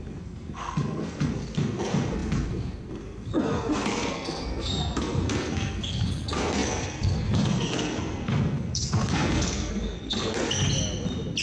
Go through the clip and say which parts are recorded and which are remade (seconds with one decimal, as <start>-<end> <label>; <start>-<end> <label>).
0.0-10.6 remade; 10.6-11.4 recorded